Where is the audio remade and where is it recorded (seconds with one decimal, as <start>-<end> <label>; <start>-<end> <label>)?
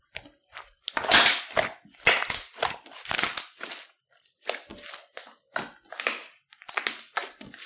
0.0-7.7 recorded